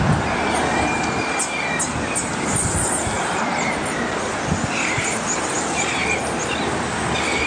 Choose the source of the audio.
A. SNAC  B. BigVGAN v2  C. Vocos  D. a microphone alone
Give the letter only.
D